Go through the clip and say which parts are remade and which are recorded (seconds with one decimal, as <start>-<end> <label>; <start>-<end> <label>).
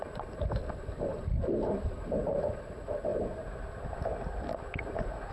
0.0-3.1 remade; 3.1-4.5 recorded; 4.5-5.3 remade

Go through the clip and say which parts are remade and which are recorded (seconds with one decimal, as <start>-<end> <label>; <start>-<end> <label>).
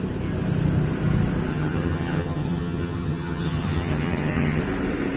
0.0-1.5 recorded; 1.5-4.6 remade; 4.6-5.2 recorded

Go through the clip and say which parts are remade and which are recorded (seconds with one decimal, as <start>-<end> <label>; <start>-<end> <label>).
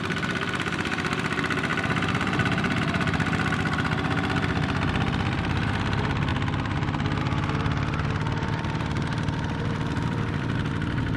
0.0-6.3 remade; 6.3-7.2 recorded; 7.2-11.2 remade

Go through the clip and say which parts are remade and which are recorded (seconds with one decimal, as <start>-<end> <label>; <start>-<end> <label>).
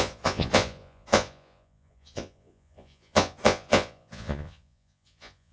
0.0-5.5 remade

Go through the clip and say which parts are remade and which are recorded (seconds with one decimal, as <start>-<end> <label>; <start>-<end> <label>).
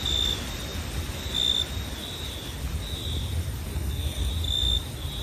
0.0-3.7 recorded; 3.7-4.3 remade; 4.3-5.2 recorded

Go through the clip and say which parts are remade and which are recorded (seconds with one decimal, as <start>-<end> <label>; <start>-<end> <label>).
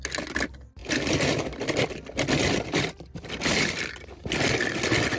0.0-0.8 recorded; 0.8-3.9 remade; 3.9-5.2 recorded